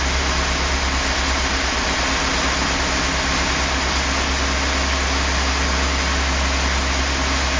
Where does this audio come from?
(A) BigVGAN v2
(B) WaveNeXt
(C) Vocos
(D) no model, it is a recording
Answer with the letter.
D